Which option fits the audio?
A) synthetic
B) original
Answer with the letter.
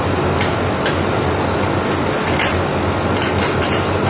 B